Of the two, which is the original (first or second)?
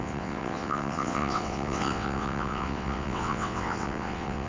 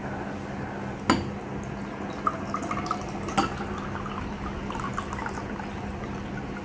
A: second